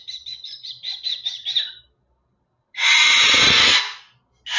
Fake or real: real